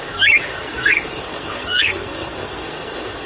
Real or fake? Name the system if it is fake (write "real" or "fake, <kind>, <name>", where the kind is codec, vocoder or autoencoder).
fake, codec, SNAC